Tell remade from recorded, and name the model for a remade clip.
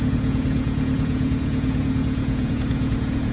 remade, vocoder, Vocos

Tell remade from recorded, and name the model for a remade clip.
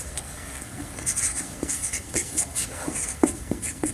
remade, codec, SNAC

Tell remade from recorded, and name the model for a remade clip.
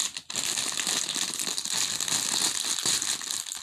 recorded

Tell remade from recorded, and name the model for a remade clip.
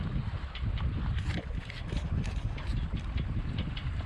recorded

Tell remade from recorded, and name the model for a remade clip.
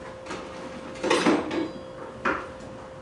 recorded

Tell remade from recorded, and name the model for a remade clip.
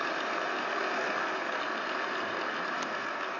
recorded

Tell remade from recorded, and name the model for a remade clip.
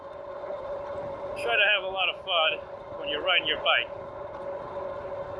recorded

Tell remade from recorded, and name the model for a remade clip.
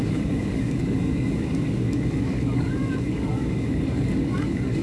remade, codec, DAC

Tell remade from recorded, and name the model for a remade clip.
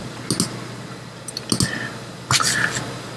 recorded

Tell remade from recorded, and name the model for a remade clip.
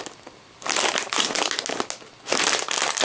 recorded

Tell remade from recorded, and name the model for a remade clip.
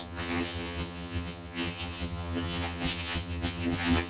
remade, vocoder, HiFi-GAN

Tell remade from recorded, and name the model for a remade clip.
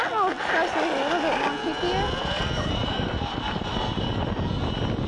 recorded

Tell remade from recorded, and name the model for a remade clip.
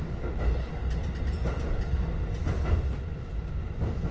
recorded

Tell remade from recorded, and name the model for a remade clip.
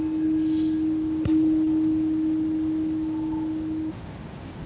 recorded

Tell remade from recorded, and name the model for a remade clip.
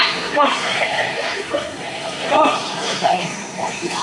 remade, codec, SNAC